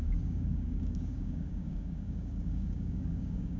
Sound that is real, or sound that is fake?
fake